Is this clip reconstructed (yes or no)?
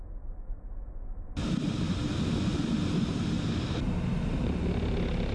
no